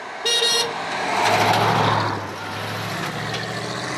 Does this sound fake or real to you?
real